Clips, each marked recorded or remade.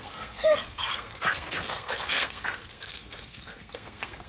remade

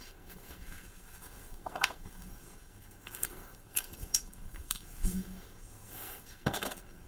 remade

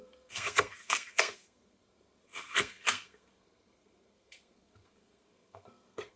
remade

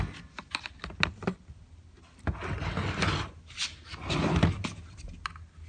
recorded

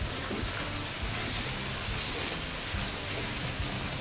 recorded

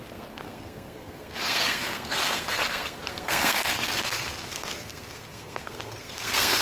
remade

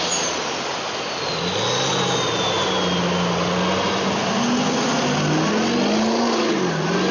recorded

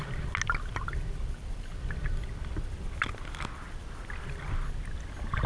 recorded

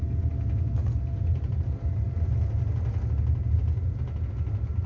recorded